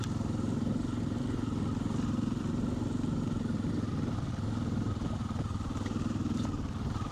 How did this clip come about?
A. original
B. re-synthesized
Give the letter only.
A